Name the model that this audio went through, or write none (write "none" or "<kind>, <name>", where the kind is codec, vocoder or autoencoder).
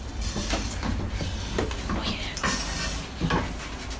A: none